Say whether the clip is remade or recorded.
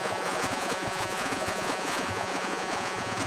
remade